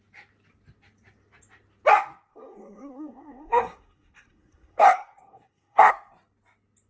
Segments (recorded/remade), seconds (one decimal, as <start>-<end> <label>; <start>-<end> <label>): 0.0-2.3 recorded; 2.3-5.9 remade; 5.9-6.9 recorded